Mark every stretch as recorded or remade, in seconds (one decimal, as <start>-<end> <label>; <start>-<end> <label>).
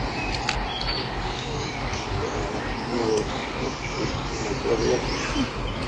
0.0-1.0 recorded; 1.0-4.5 remade; 4.5-5.9 recorded